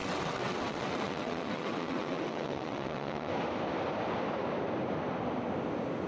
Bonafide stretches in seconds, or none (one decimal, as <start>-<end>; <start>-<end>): 3.3-6.1